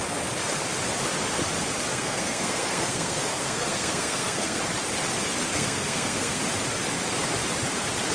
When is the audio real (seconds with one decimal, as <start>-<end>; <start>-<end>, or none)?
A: 0.0-1.9; 4.6-5.5; 6.4-8.1

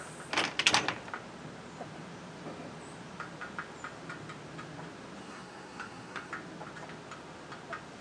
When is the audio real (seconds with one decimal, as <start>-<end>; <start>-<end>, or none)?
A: 0.0-5.2; 6.3-8.0

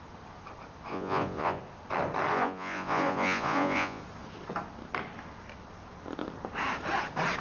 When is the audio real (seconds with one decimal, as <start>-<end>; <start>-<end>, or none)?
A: 0.0-0.9; 1.6-2.3; 4.0-7.4

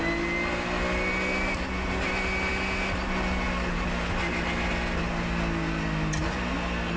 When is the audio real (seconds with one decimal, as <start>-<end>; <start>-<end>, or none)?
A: 0.0-7.0

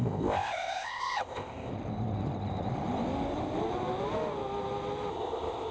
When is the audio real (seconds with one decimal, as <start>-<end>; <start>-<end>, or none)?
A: 1.7-5.1

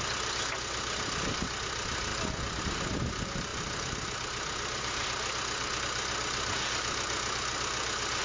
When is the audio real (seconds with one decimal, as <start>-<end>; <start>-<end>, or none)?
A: 0.0-8.2

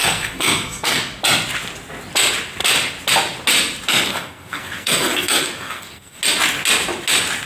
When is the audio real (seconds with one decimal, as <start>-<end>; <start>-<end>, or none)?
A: 1.0-4.1; 6.2-7.5

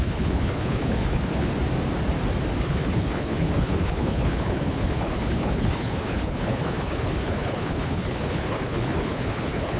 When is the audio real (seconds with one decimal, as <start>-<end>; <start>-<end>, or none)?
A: 1.5-2.6